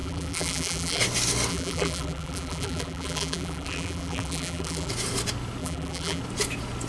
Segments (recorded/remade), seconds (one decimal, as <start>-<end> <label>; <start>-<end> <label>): 0.0-1.0 remade; 1.0-1.5 recorded; 1.5-4.9 remade; 4.9-5.6 recorded; 5.6-6.2 remade; 6.2-6.9 recorded